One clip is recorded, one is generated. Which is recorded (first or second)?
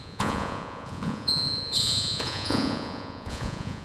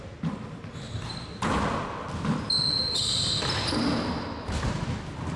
second